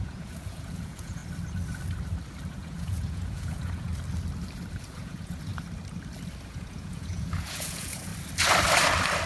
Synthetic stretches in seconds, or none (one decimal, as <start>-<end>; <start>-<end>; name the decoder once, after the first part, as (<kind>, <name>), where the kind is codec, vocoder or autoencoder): 0.0-1.2 (vocoder, Vocos); 2.5-3.9; 4.7-5.5; 6.4-8.1